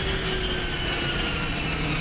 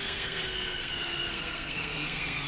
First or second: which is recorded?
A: first